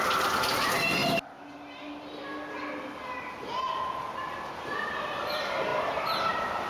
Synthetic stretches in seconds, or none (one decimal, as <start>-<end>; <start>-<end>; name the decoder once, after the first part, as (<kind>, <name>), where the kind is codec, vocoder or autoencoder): 0.0-1.0 (vocoder, BigVGAN v2); 5.0-5.7; 6.3-6.7